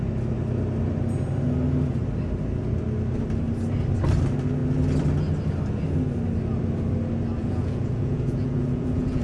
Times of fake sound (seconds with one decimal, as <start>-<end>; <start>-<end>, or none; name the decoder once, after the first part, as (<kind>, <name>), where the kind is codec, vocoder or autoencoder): 7.4-9.2 (vocoder, Vocos)